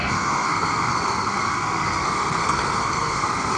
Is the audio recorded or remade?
remade